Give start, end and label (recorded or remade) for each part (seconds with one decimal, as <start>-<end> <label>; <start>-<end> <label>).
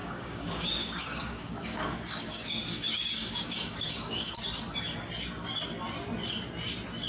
0.0-4.3 remade; 4.3-7.1 recorded